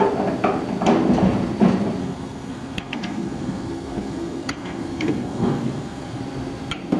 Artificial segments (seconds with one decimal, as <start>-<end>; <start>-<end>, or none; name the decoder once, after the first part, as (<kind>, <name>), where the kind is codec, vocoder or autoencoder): 2.0-6.2 (codec, SNAC)